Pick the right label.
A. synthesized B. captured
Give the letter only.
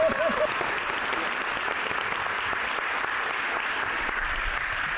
B